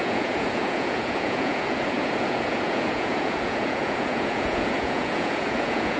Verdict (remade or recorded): remade